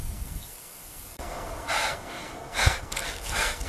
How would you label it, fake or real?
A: fake